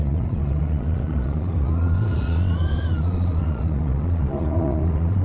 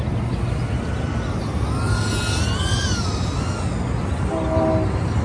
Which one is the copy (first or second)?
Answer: first